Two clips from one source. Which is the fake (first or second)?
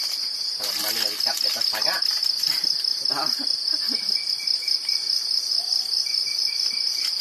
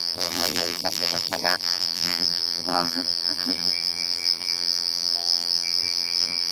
second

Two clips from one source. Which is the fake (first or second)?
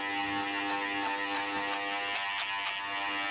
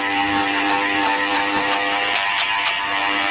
second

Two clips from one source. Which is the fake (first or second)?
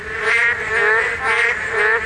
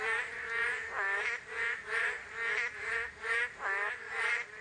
second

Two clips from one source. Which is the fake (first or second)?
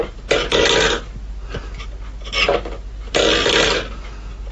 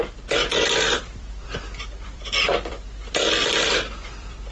second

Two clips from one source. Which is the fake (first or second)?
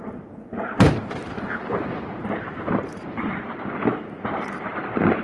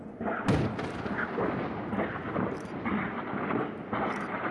first